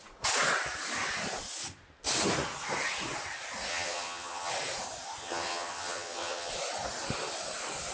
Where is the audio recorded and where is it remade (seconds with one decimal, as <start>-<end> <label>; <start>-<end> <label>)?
0.0-3.7 recorded; 3.7-4.5 remade; 4.5-5.2 recorded; 5.2-6.5 remade; 6.5-7.9 recorded